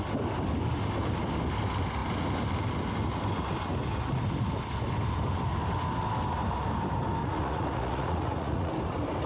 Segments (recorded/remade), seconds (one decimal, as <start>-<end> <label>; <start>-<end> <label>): 0.0-7.2 recorded; 7.2-8.7 remade; 8.7-9.3 recorded